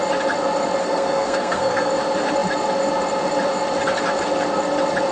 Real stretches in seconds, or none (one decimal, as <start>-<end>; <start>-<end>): 0.0-0.8; 1.9-5.1